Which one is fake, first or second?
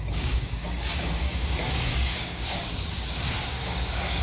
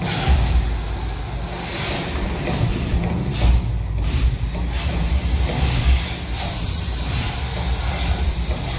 first